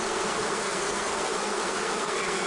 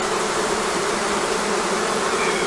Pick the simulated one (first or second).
first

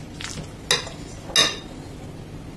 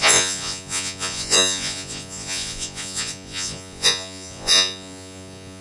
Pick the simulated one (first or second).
second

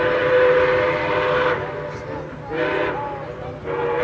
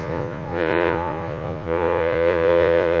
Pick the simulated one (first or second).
second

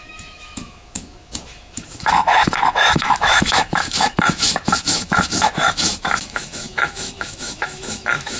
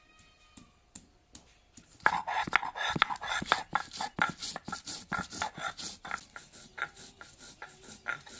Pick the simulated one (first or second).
first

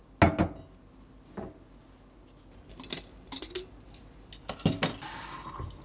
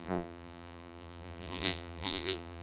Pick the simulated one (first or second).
second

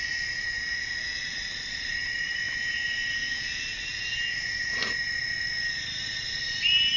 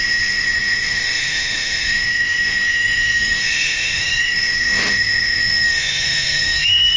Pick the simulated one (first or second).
second